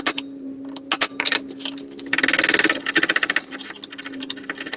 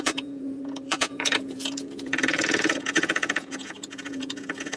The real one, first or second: first